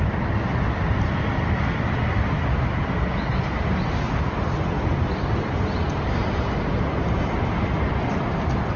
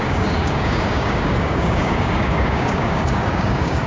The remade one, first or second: second